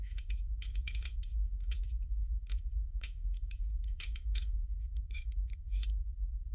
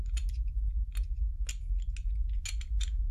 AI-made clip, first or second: first